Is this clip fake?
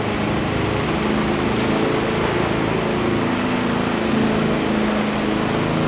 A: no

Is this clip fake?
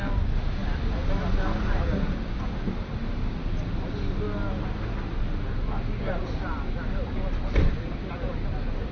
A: no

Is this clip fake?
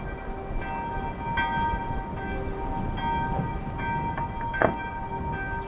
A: no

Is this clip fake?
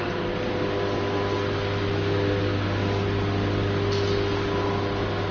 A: no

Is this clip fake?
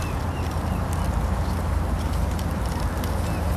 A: no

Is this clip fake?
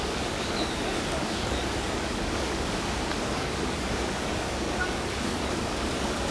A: yes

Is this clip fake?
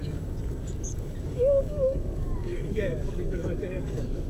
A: yes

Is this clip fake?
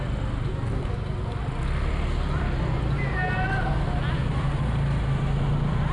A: no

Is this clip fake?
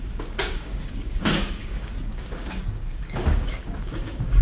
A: yes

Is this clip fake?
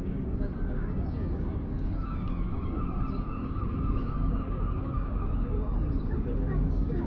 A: yes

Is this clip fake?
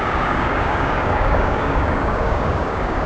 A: yes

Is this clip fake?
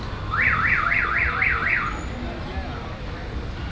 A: no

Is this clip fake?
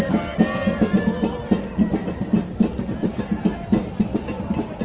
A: no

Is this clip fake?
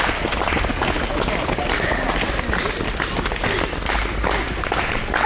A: no